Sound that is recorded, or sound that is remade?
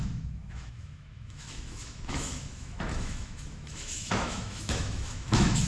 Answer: remade